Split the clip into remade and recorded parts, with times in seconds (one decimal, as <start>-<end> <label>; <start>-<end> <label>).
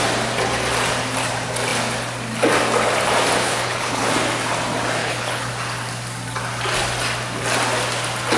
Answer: 0.0-3.4 recorded; 3.4-4.1 remade; 4.1-5.0 recorded; 5.0-5.5 remade; 5.5-8.4 recorded